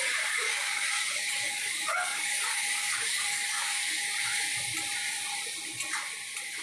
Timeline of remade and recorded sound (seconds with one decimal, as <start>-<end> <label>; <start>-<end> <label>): 0.0-4.0 remade; 4.0-6.6 recorded